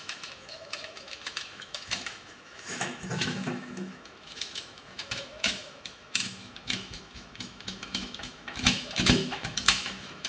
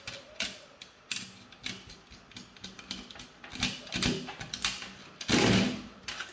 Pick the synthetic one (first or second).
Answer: first